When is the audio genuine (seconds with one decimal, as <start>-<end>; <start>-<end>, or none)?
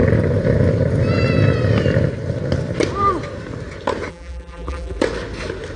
0.0-4.1; 5.0-5.8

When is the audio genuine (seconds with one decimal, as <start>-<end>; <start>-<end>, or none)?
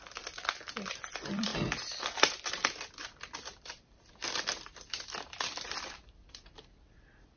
1.5-2.0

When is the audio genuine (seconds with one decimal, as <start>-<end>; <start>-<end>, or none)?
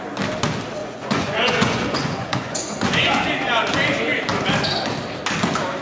0.0-0.8; 3.3-5.8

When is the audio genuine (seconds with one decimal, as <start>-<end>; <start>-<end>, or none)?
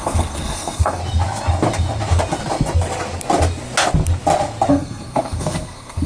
1.0-4.7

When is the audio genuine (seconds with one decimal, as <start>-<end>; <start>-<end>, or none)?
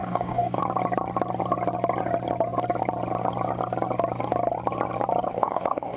0.6-5.3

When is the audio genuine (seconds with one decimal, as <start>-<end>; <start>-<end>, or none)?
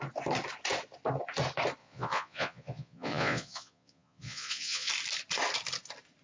0.0-1.8; 4.9-6.2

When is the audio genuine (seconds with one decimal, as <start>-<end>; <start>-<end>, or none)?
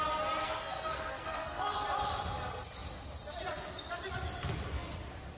0.0-0.4; 1.7-5.4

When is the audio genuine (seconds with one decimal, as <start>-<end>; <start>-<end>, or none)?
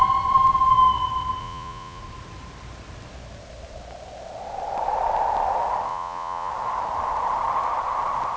0.0-1.4; 2.0-5.9; 6.5-8.4